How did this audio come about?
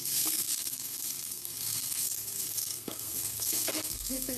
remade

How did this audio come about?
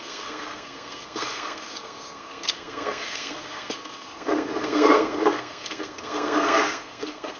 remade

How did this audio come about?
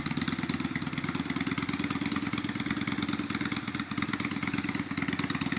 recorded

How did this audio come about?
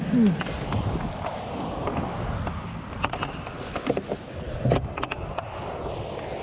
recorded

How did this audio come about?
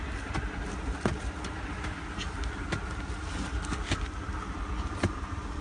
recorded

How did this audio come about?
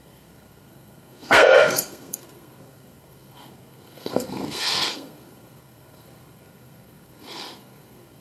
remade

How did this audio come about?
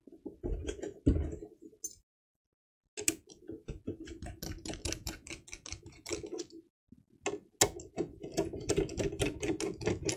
recorded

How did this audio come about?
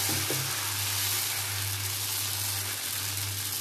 recorded